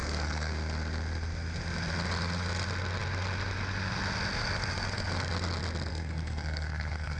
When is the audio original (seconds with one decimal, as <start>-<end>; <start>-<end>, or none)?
0.5-5.9